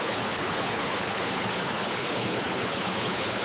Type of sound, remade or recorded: remade